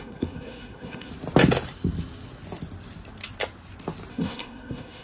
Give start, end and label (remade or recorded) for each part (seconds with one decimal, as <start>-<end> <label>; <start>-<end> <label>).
0.0-1.1 remade; 1.1-4.1 recorded; 4.1-5.0 remade